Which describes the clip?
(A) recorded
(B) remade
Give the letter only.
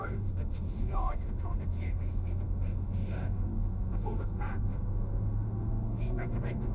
B